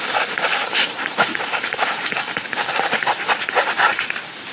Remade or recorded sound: recorded